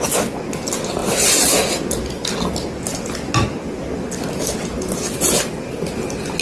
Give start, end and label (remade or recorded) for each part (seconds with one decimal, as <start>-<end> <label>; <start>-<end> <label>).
0.0-6.4 recorded